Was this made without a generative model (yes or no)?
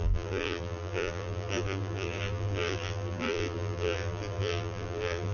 no